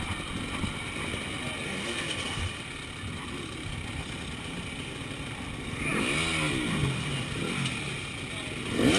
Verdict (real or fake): real